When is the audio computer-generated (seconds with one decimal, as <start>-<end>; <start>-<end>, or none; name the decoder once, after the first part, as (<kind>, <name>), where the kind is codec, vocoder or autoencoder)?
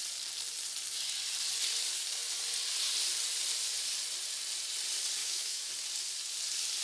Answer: 5.2-5.7 (autoencoder, DAC-VAE)